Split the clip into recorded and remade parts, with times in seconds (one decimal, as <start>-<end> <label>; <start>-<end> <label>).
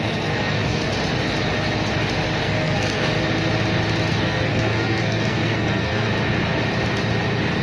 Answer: 0.0-0.9 remade; 0.9-2.4 recorded; 2.4-3.1 remade; 3.1-4.1 recorded; 4.1-6.1 remade; 6.1-7.6 recorded